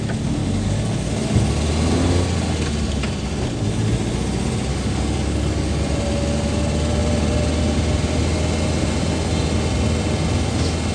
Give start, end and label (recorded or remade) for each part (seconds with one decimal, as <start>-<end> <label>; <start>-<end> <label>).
0.0-0.4 recorded; 0.4-1.1 remade; 1.1-4.7 recorded; 4.7-5.8 remade; 5.8-10.9 recorded